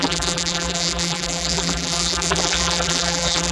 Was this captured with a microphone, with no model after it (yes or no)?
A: no